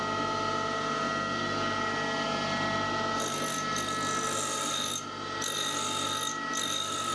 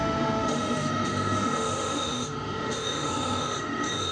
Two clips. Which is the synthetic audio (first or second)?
second